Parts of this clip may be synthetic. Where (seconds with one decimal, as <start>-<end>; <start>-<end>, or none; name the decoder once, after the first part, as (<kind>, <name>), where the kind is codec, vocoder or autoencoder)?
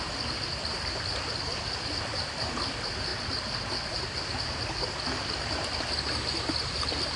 none